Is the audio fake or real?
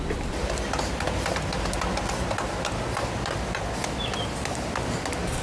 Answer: real